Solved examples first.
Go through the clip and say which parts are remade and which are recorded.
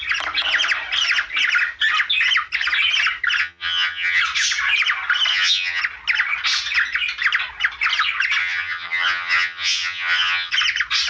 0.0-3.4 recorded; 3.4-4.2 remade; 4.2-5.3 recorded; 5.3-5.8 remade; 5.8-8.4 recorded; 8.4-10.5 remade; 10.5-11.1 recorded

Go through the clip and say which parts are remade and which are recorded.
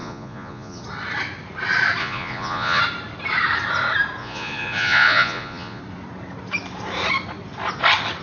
0.0-0.8 remade; 0.8-2.0 recorded; 2.0-2.8 remade; 2.8-4.2 recorded; 4.2-5.8 remade; 5.8-8.2 recorded